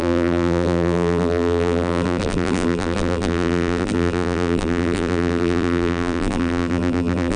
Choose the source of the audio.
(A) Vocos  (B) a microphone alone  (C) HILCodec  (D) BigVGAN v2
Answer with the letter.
D